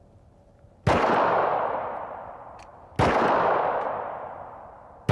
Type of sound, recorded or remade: recorded